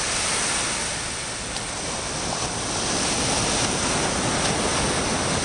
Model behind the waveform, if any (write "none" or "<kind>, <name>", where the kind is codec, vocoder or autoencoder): none